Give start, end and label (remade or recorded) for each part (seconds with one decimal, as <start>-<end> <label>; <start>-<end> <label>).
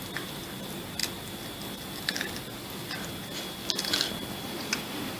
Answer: 0.0-5.2 recorded